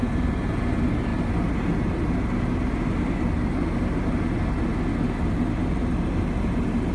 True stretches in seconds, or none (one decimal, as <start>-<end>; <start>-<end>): 0.0-6.9